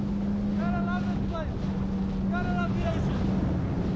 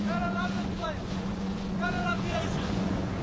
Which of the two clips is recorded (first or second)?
first